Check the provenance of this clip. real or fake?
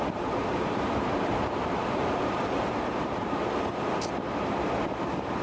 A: fake